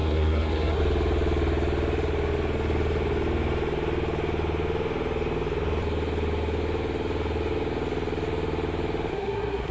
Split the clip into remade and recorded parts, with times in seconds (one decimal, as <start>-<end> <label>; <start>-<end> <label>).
0.0-0.8 remade; 0.8-9.1 recorded; 9.1-9.7 remade